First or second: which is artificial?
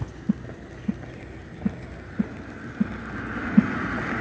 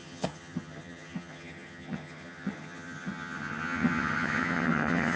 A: second